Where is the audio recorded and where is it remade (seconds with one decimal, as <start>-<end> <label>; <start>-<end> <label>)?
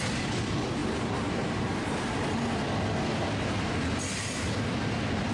0.0-5.3 recorded